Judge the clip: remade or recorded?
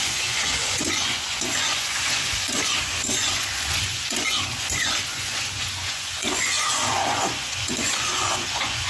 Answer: remade